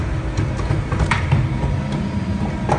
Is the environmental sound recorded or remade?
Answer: recorded